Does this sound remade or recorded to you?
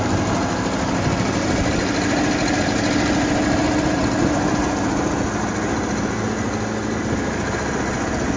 recorded